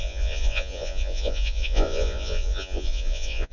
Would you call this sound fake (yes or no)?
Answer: yes